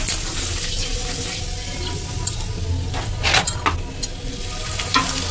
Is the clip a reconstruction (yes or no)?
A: no